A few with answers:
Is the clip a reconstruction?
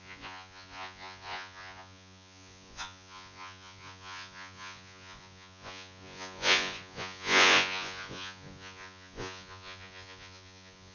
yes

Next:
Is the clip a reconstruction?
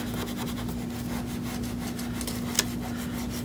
no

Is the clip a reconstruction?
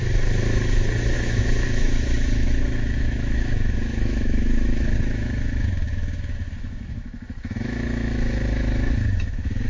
yes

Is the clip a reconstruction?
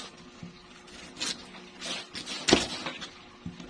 no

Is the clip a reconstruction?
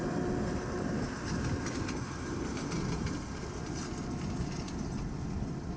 no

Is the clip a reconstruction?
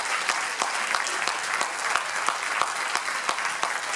no